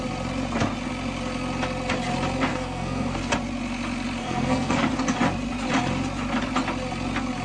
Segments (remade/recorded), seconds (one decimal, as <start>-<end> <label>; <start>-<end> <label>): 0.0-2.5 recorded; 2.5-3.3 remade; 3.3-4.2 recorded; 4.2-4.9 remade; 4.9-7.4 recorded